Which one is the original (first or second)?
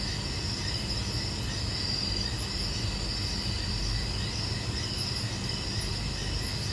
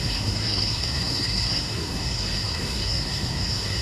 first